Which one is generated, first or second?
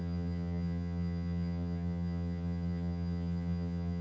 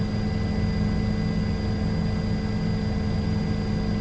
first